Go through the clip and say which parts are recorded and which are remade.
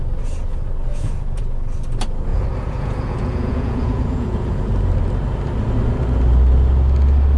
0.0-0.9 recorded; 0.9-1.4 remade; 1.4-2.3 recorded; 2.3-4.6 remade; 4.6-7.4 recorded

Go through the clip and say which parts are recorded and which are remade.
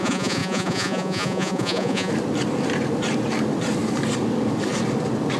0.0-2.1 remade; 2.1-5.4 recorded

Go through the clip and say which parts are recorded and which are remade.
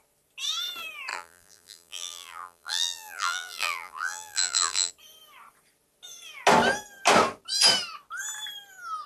0.0-1.1 recorded; 1.1-4.9 remade; 4.9-9.1 recorded